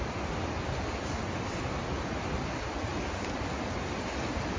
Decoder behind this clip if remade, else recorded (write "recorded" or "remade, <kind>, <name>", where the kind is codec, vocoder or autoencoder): recorded